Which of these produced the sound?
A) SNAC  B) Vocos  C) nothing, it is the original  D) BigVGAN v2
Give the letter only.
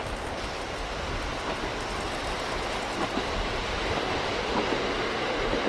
C